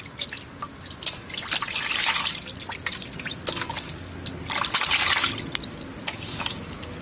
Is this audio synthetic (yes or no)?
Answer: no